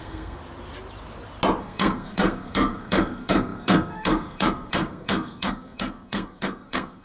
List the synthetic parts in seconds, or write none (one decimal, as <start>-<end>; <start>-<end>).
0.0-0.4; 1.6-7.0